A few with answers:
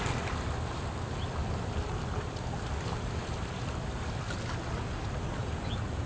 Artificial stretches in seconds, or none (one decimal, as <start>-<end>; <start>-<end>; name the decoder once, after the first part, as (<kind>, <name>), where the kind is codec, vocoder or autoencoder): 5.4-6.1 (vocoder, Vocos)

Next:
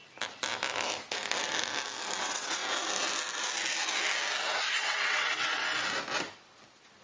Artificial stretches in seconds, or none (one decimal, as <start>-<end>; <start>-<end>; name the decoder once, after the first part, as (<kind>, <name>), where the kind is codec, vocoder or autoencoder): 2.2-2.6 (vocoder, WaveNeXt); 4.7-5.6

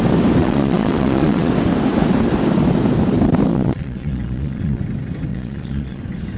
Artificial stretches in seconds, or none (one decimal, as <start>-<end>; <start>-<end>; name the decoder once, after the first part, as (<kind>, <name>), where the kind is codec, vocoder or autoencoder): 0.4-1.5 (vocoder, Vocos); 3.5-4.8; 5.3-6.0

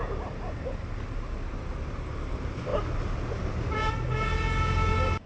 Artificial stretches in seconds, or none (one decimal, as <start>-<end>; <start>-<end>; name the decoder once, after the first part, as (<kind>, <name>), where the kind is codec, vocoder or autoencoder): none

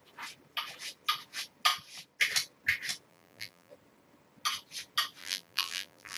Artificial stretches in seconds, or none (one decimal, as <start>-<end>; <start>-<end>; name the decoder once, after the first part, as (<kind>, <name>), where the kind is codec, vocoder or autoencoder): 3.1-3.7 (vocoder, BigVGAN v2); 5.2-6.2

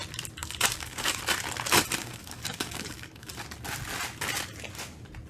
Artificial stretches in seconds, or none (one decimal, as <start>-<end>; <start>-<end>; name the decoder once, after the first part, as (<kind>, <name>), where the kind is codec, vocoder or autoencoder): 0.4-1.2 (codec, DAC); 2.0-3.3